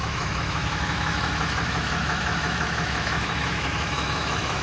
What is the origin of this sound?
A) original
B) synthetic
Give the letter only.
B